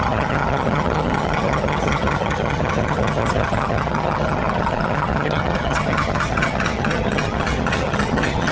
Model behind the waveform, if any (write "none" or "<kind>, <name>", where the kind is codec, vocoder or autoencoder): vocoder, HiFi-GAN